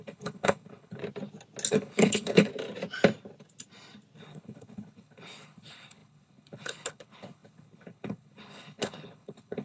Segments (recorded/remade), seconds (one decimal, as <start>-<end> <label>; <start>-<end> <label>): 0.0-1.0 remade; 1.0-1.7 recorded; 1.7-2.5 remade; 2.5-4.2 recorded; 4.2-9.6 remade